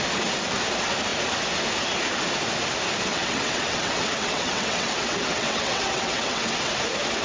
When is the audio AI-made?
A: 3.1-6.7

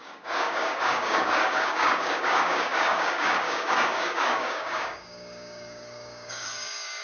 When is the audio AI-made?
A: 0.0-7.0

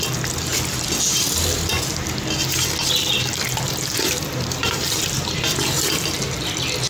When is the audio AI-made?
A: none

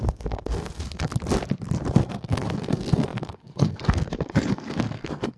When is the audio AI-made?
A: 0.0-1.1; 1.9-5.4

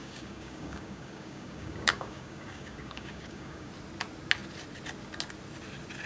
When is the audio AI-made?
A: 0.0-3.7

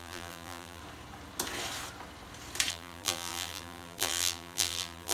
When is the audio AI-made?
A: 0.0-0.8; 2.7-5.1